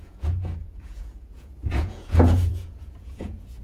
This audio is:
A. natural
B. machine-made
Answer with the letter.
B